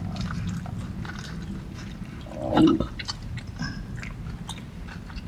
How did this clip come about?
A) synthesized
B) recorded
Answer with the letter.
B